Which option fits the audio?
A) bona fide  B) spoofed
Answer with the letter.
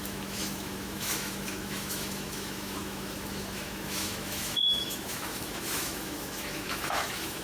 B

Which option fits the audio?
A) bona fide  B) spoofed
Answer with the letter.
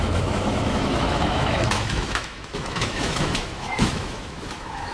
B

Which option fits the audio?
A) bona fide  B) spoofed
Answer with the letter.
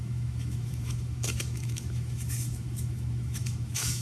B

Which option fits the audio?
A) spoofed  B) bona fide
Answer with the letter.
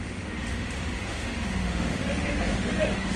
A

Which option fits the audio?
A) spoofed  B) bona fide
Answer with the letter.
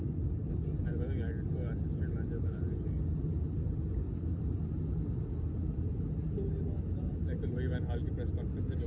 B